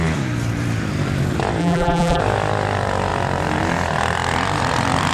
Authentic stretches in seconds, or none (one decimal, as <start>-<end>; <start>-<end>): 0.0-1.6; 2.2-5.1